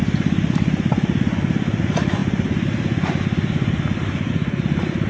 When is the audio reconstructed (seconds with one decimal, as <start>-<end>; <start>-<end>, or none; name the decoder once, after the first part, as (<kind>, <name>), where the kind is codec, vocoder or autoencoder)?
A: none